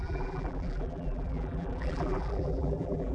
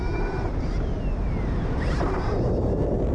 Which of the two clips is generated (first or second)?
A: first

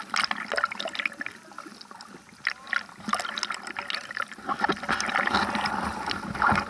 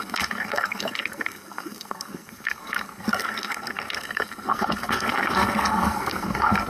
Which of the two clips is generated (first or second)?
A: second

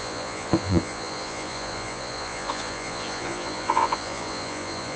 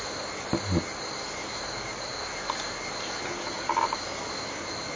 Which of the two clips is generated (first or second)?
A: first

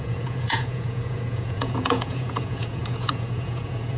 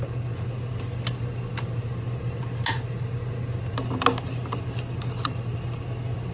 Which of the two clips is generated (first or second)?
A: first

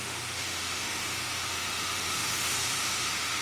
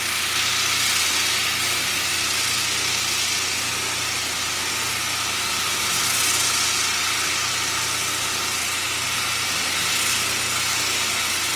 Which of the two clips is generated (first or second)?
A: first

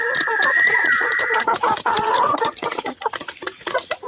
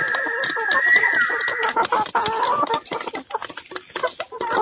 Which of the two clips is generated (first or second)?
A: first